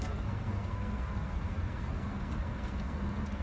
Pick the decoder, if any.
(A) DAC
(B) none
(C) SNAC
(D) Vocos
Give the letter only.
C